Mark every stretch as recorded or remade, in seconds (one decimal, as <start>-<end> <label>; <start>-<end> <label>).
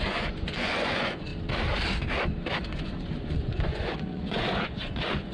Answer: 0.0-1.3 remade; 1.3-2.7 recorded; 2.7-5.3 remade